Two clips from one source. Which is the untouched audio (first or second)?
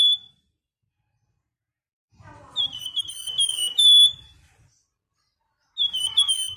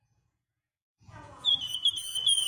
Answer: first